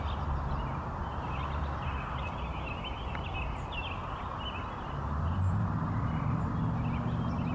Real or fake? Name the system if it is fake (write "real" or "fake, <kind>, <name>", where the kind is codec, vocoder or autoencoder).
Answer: real